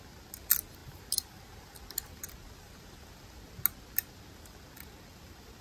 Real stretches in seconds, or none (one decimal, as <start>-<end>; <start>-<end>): 0.0-5.6